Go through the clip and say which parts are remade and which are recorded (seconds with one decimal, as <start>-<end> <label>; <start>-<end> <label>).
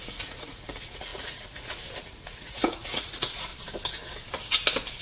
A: 0.0-3.5 remade; 3.5-5.0 recorded